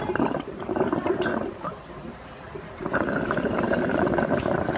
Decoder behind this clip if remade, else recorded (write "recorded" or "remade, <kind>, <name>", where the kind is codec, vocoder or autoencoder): remade, vocoder, BigVGAN v2